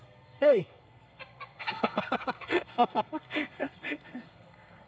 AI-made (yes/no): yes